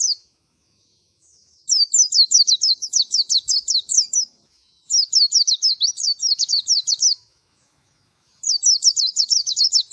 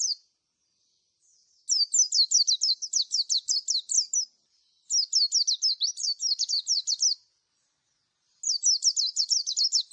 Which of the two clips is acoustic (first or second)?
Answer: second